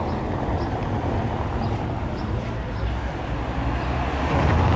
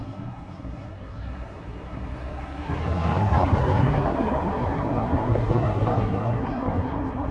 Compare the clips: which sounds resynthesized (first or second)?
second